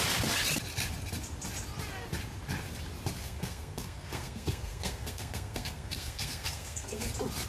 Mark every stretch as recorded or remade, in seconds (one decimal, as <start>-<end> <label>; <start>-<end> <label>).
0.0-3.2 recorded; 3.2-7.1 remade; 7.1-7.5 recorded